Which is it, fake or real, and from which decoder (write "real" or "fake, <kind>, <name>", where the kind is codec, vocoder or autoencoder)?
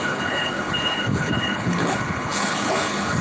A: fake, codec, HILCodec